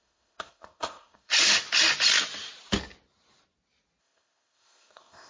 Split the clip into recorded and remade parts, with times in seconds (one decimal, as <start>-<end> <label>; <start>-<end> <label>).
0.0-1.3 remade; 1.3-4.0 recorded; 4.0-5.3 remade